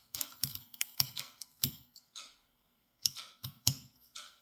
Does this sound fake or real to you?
fake